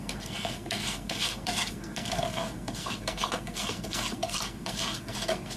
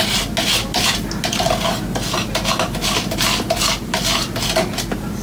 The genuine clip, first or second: second